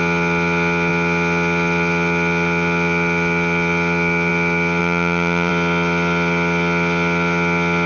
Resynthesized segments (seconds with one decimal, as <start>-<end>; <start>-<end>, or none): 4.8-5.5